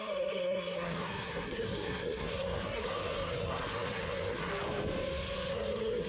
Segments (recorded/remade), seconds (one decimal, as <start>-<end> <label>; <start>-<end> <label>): 0.0-4.5 remade; 4.5-5.5 recorded; 5.5-6.1 remade